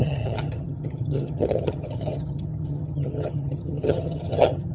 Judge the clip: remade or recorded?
remade